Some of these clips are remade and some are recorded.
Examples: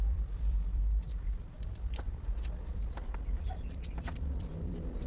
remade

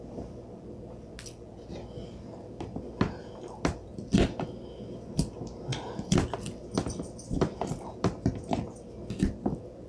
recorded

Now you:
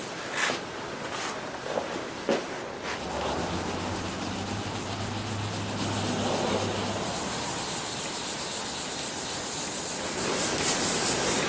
recorded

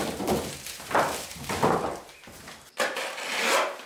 remade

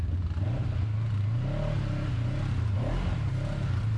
recorded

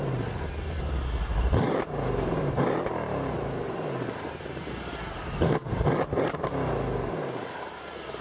remade